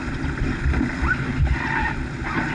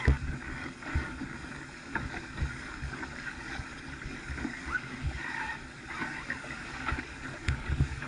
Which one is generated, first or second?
second